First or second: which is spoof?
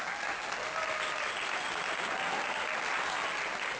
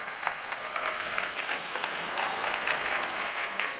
second